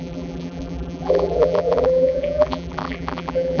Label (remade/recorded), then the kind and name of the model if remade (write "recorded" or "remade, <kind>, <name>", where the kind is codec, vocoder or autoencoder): remade, vocoder, BigVGAN v2